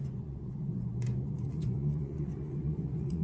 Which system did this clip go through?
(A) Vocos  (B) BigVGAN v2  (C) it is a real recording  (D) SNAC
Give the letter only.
A